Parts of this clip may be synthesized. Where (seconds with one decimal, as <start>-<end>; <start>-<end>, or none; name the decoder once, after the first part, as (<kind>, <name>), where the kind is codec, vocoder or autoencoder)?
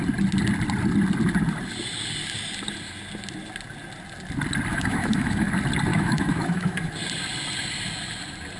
4.7-5.5 (autoencoder, DAC-VAE); 5.9-6.9